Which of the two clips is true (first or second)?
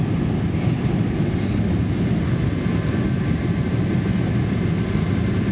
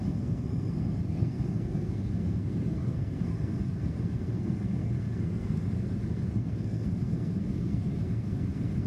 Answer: first